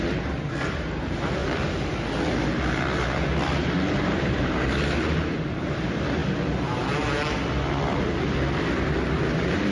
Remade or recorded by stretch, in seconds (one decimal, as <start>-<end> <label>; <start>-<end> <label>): 0.0-1.4 remade; 1.4-3.9 recorded; 3.9-6.2 remade; 6.2-9.2 recorded; 9.2-9.7 remade